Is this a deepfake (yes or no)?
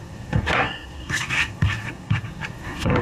yes